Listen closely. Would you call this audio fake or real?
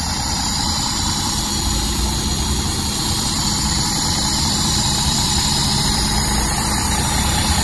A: fake